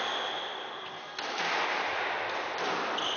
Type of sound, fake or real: real